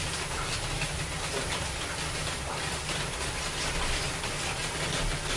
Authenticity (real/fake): real